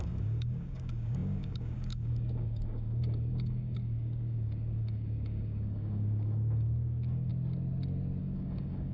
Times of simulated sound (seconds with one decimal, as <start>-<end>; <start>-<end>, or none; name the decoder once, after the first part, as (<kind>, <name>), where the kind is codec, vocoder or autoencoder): 0.0-7.3 (codec, DAC); 8.2-8.9